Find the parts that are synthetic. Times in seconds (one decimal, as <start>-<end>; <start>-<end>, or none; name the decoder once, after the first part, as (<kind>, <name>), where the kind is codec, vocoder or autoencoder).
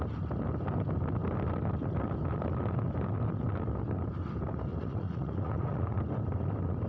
4.7-6.0 (vocoder, Vocos)